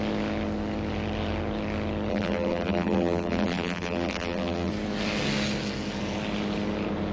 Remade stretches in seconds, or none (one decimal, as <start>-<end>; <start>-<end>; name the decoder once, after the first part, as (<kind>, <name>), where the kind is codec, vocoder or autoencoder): 2.1-4.7 (vocoder, BigVGAN v2)